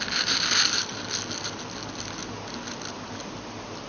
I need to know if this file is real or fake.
real